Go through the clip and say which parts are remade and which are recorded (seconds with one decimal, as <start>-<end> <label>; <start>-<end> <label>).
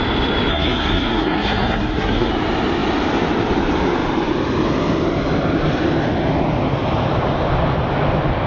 0.0-0.5 recorded; 0.5-2.3 remade; 2.3-8.5 recorded